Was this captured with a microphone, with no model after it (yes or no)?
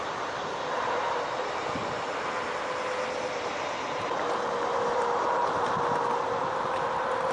yes